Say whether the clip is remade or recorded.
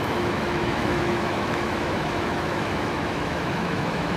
remade